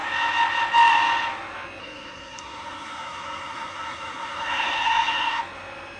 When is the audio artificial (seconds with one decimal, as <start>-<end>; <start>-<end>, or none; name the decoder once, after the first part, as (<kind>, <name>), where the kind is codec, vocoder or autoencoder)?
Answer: 1.8-5.4 (codec, SNAC)